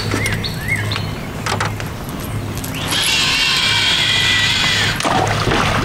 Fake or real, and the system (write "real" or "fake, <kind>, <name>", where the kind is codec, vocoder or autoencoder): real